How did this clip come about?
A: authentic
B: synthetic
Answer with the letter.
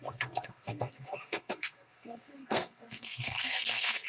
B